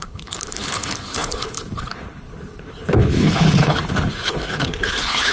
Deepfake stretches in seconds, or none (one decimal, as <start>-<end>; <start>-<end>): 0.0-5.3